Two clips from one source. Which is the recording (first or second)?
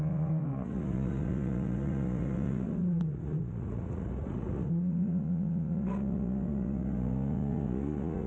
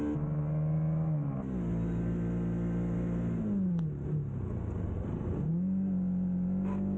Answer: second